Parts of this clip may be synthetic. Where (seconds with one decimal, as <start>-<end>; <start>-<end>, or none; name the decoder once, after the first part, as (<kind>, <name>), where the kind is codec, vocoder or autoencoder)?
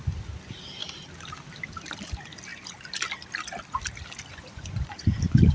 4.3-5.1 (vocoder, Vocos)